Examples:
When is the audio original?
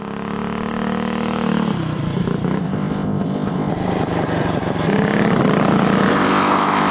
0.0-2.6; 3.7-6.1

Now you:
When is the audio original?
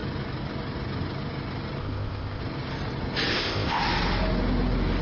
0.0-1.8; 2.4-3.3; 3.8-5.0